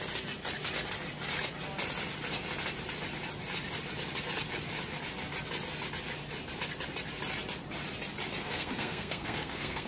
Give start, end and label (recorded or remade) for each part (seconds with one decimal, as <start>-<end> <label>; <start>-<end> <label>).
0.0-8.4 recorded; 8.4-9.9 remade